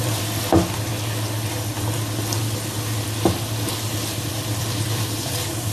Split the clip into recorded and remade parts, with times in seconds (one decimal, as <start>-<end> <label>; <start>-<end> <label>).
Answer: 0.0-0.9 remade; 0.9-4.3 recorded; 4.3-5.7 remade